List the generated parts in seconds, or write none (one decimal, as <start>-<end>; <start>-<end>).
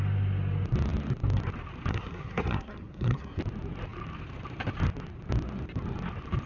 1.9-3.4